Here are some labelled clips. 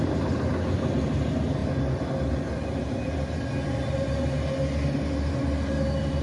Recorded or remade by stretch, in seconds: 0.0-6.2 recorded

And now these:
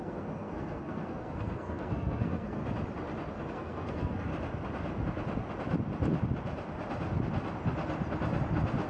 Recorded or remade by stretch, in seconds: 0.0-2.6 remade; 2.6-3.5 recorded; 3.5-4.3 remade; 4.3-8.9 recorded

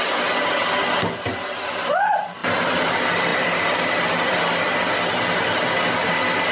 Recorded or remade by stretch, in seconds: 0.0-6.5 recorded

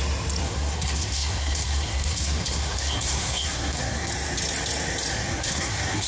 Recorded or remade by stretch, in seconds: 0.0-0.4 recorded; 0.4-4.1 remade; 4.1-5.1 recorded; 5.1-6.1 remade

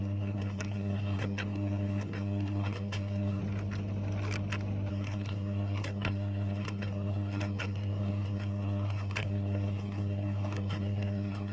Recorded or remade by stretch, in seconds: 0.0-3.4 remade; 3.4-4.9 recorded; 4.9-11.5 remade